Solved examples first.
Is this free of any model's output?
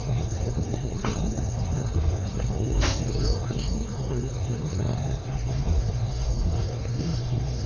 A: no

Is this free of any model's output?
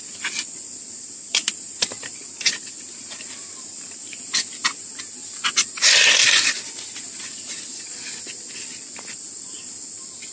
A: yes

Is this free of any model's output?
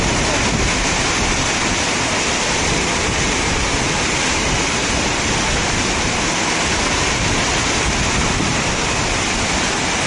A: yes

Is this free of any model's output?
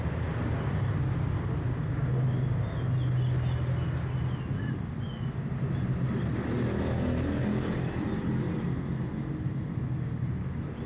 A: yes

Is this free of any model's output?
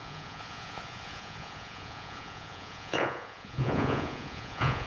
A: no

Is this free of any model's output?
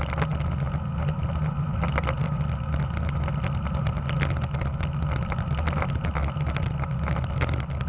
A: yes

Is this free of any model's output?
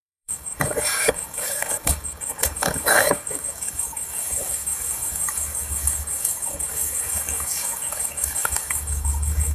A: no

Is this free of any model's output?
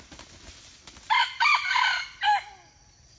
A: yes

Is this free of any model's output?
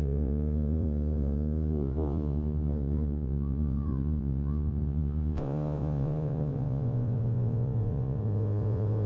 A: no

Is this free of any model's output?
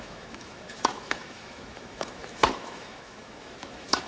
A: no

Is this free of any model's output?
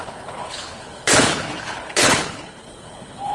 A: no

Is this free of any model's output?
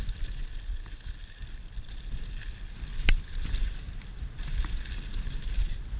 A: yes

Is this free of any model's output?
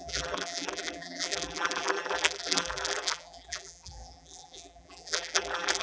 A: no